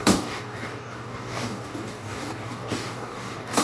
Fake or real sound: fake